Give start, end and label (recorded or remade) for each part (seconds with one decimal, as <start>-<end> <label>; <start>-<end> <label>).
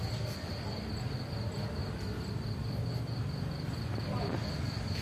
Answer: 0.0-5.0 recorded